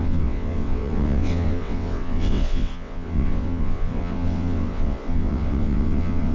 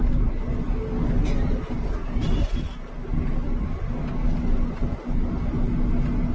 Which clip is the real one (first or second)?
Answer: second